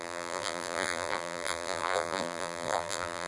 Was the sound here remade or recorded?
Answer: remade